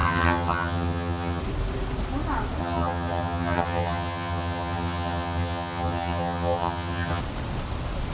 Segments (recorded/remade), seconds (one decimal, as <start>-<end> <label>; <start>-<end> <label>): 0.0-1.4 remade; 1.4-2.6 recorded; 2.6-7.2 remade; 7.2-8.1 recorded